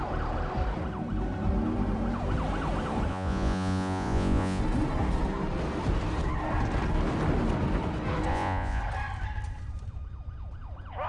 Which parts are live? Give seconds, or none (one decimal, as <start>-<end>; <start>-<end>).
0.0-3.1; 4.6-8.3; 8.8-11.1